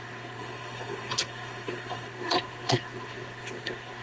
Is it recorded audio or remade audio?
remade